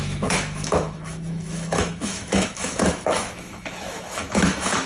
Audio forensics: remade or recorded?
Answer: remade